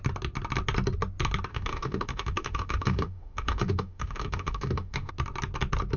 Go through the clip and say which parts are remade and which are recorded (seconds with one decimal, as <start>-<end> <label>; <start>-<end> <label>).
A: 0.0-1.5 recorded; 1.5-5.1 remade; 5.1-6.0 recorded